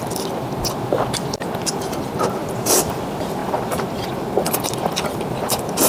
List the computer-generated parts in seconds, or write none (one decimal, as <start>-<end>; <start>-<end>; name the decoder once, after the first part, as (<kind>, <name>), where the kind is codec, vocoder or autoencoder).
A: 2.4-3.0 (vocoder, BigVGAN v2)